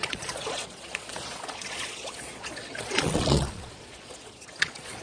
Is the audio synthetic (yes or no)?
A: yes